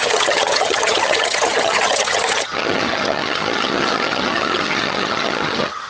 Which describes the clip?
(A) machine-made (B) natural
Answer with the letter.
A